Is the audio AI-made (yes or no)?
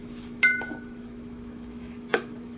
yes